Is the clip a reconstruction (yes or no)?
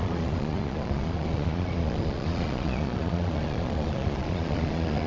yes